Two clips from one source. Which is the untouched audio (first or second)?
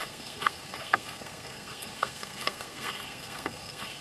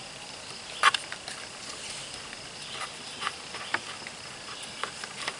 second